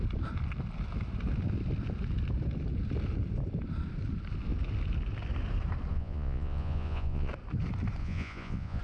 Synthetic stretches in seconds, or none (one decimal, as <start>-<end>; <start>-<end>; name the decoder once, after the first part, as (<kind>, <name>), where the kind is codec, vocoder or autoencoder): 5.9-7.3 (vocoder, Vocos); 8.0-8.8

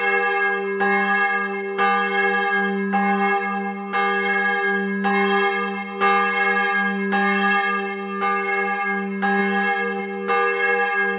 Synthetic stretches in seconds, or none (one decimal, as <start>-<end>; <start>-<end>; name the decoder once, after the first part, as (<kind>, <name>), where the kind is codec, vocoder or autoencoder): none

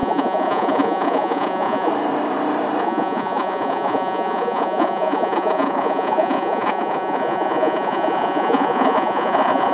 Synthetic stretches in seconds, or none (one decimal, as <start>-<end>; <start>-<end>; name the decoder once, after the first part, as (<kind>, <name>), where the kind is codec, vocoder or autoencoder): 0.0-1.9 (vocoder, Vocos); 2.8-9.7

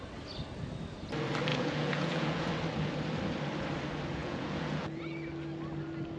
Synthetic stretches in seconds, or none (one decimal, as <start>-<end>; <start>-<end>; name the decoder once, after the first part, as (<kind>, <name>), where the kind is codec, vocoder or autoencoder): 1.5-2.5 (vocoder, Vocos); 4.2-5.0

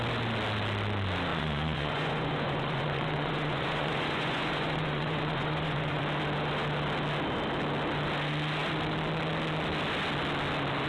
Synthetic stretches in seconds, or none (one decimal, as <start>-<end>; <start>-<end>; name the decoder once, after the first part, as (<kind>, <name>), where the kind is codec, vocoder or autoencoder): 1.3-6.0 (vocoder, Vocos)

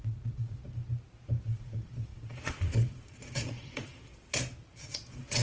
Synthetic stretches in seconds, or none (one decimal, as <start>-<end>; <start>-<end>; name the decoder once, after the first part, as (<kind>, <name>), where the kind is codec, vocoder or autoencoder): 0.0-0.6 (vocoder, Vocos); 1.4-4.1; 4.8-5.4